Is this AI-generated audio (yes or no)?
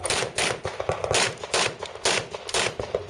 no